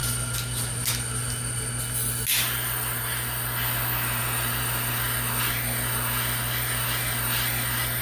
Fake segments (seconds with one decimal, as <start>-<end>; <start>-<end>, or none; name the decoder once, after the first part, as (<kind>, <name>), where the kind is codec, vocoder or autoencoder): none